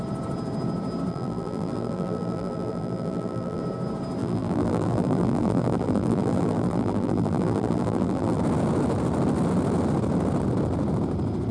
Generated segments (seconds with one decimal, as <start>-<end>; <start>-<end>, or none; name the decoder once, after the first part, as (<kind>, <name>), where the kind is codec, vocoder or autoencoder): 1.1-3.6 (vocoder, BigVGAN v2); 4.2-8.4